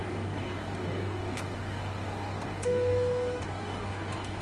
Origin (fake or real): fake